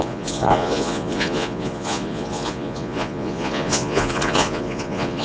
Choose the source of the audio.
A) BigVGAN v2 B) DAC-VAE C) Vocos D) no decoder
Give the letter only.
C